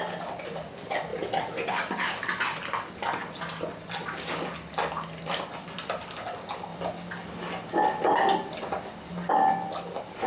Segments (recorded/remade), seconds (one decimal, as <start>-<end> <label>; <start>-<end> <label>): 0.0-10.3 recorded